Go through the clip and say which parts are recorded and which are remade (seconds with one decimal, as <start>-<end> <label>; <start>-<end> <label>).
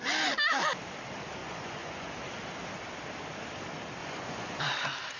0.0-1.4 recorded; 1.4-2.1 remade; 2.1-4.0 recorded; 4.0-4.7 remade; 4.7-5.2 recorded